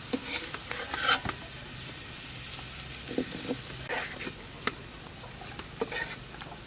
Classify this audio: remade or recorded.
recorded